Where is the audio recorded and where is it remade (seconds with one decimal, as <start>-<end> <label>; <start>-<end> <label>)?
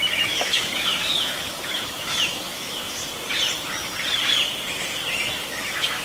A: 0.0-3.0 remade; 3.0-5.5 recorded; 5.5-6.0 remade